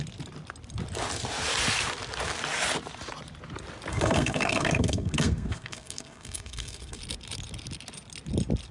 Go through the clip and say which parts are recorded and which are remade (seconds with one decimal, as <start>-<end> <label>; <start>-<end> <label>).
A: 0.0-3.9 recorded; 3.9-7.0 remade; 7.0-8.7 recorded